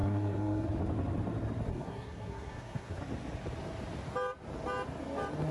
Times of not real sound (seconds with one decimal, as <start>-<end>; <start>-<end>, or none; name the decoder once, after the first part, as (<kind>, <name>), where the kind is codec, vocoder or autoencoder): 0.0-0.7 (codec, SNAC); 1.7-3.0